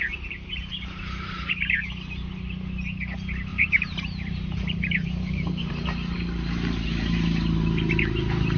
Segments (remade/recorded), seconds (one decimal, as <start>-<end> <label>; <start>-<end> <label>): 0.0-3.5 recorded; 3.5-5.7 remade; 5.7-8.6 recorded